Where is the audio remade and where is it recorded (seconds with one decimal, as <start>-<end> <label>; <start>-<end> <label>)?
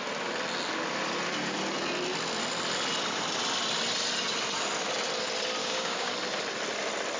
0.0-5.6 recorded; 5.6-6.1 remade; 6.1-7.2 recorded